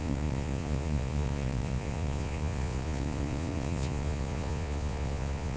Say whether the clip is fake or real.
fake